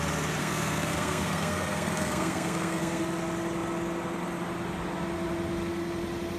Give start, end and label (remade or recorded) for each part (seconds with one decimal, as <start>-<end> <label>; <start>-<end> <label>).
0.0-0.4 recorded; 0.4-3.0 remade; 3.0-6.4 recorded

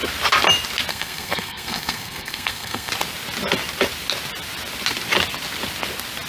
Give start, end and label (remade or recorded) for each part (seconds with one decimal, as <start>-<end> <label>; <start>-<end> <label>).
0.0-0.9 recorded; 0.9-2.9 remade; 2.9-6.3 recorded

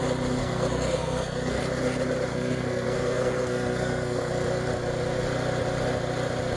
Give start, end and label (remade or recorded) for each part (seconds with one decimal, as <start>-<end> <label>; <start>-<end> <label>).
0.0-0.4 recorded; 0.4-1.6 remade; 1.6-2.3 recorded; 2.3-4.3 remade; 4.3-6.6 recorded

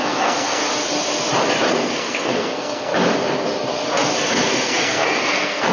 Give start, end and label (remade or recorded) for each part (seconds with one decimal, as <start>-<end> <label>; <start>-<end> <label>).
0.0-0.6 remade; 0.6-1.7 recorded; 1.7-2.9 remade; 2.9-4.3 recorded; 4.3-5.7 remade

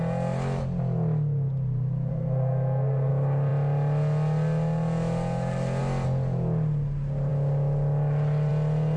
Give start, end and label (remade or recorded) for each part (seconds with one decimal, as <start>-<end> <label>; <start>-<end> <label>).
0.0-2.1 recorded; 2.1-3.1 remade; 3.1-9.0 recorded

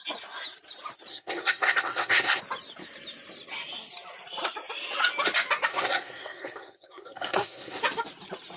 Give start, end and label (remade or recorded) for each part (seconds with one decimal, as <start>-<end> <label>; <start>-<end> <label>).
0.0-1.1 recorded; 1.1-2.4 remade; 2.4-5.7 recorded; 5.7-7.8 remade; 7.8-8.6 recorded

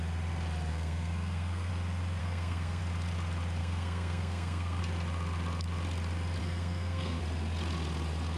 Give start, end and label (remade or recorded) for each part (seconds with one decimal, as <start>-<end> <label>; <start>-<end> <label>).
0.0-0.7 recorded; 0.7-1.7 remade; 1.7-2.2 recorded; 2.2-2.8 remade; 2.8-3.6 recorded; 3.6-4.8 remade; 4.8-6.4 recorded; 6.4-7.2 remade; 7.2-8.4 recorded